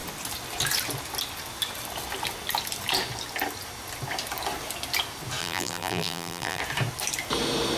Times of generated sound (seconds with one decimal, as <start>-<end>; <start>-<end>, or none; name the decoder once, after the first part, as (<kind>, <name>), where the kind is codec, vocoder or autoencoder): 5.4-6.6 (vocoder, BigVGAN v2)